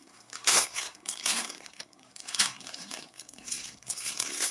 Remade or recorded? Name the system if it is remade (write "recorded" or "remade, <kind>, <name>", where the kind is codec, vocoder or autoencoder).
remade, codec, SNAC